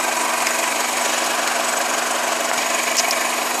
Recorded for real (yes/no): yes